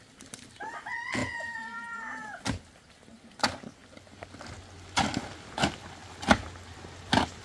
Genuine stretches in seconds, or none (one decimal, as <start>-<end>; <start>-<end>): 0.0-1.2; 2.4-7.4